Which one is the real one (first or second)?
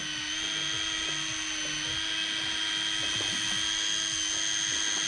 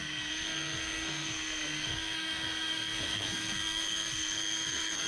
first